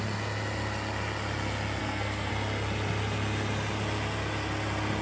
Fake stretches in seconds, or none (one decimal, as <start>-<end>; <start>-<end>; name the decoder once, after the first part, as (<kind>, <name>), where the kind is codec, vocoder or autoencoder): 1.8-2.3 (codec, SNAC)